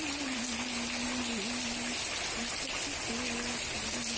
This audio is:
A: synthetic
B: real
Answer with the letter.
B